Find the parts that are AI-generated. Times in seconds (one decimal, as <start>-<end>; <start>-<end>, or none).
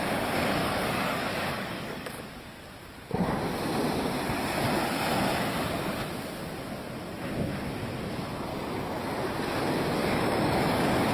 0.6-2.2; 8.5-9.0; 10.0-11.1